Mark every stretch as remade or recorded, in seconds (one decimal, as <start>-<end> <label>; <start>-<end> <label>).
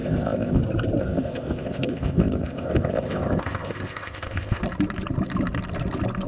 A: 0.0-0.6 remade; 0.6-1.0 recorded; 1.0-4.6 remade; 4.6-6.3 recorded